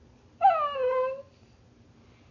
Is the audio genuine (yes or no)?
yes